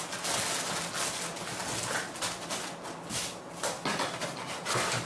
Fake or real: real